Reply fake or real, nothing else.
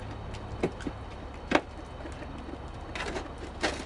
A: real